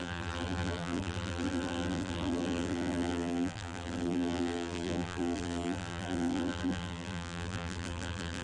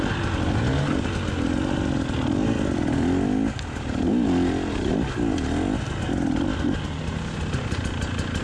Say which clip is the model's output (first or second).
first